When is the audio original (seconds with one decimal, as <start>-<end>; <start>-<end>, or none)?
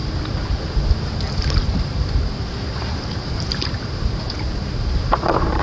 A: none